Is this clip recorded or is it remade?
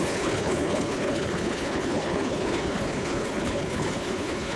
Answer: remade